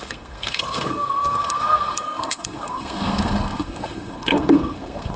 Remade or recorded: remade